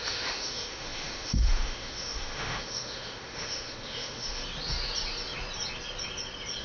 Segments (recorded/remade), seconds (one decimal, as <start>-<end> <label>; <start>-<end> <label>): 0.0-4.4 remade; 4.4-6.6 recorded